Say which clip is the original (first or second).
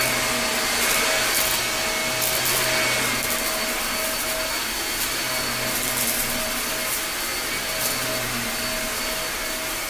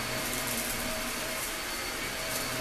first